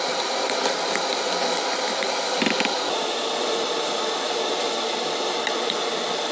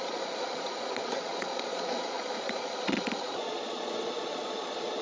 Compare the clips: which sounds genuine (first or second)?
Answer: first